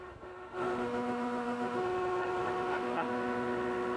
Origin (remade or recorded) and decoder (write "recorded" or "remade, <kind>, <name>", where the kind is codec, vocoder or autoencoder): remade, autoencoder, DAC-VAE